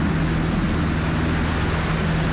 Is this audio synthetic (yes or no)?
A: no